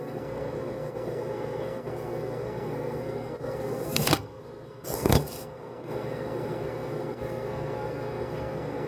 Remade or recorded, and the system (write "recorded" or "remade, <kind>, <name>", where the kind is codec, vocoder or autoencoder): remade, codec, SNAC